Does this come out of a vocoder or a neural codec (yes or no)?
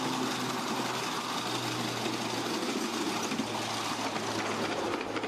no